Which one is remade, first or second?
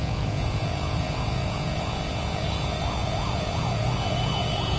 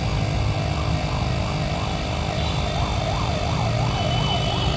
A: first